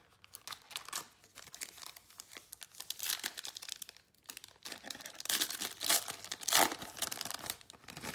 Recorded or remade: recorded